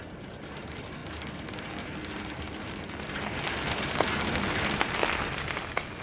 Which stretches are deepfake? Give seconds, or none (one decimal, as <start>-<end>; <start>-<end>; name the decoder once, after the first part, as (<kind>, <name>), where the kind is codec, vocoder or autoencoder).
none